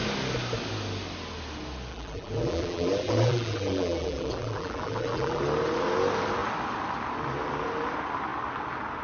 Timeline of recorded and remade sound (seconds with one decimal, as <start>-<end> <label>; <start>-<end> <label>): 0.0-1.9 recorded; 1.9-5.4 remade; 5.4-9.0 recorded